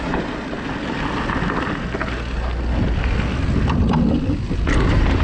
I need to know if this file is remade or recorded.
recorded